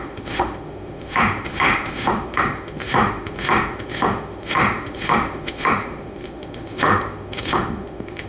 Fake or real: fake